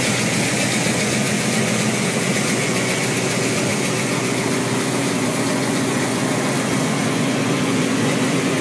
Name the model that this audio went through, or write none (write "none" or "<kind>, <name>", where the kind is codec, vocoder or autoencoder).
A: vocoder, Vocos